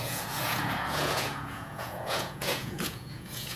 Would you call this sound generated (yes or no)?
yes